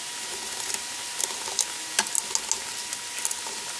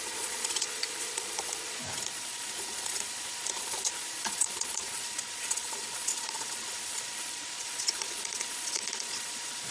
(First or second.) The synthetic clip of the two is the second